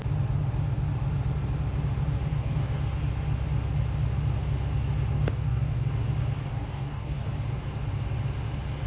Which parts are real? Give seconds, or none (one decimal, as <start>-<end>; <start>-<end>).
0.0-2.3; 2.8-5.1; 5.9-6.5; 7.2-8.9